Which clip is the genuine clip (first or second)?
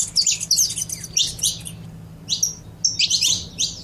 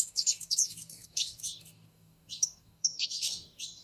first